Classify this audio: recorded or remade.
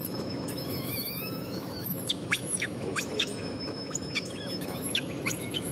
remade